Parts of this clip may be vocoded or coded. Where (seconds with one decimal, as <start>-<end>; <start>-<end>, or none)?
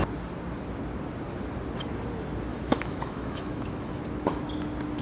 2.5-4.0